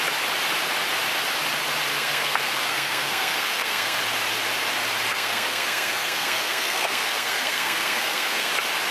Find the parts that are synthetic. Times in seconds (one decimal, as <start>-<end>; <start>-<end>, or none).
1.9-4.0; 5.1-8.5